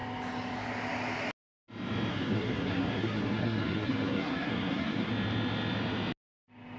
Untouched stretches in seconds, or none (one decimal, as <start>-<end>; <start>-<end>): 0.0-2.1; 5.1-6.8